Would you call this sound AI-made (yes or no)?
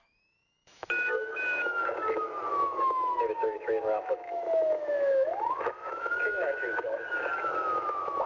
yes